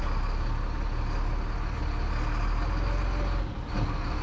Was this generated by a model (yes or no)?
no